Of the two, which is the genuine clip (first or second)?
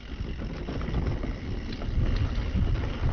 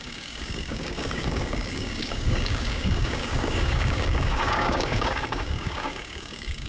first